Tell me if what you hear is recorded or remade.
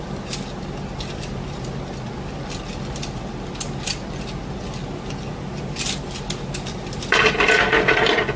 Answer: recorded